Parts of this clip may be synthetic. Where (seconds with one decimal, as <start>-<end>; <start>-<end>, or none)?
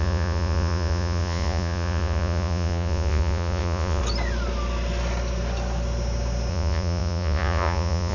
0.0-4.0; 6.5-8.1